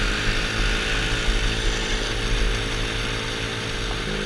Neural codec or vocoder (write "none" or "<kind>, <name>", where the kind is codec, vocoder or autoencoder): none